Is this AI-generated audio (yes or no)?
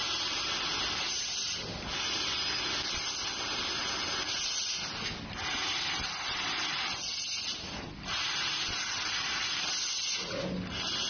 no